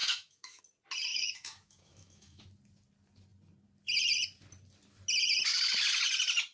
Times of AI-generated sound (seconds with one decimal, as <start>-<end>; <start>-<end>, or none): 0.0-0.6; 1.1-2.4